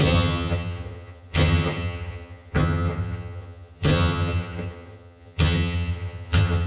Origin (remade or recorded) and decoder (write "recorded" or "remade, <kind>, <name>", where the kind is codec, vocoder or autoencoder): remade, vocoder, HiFi-GAN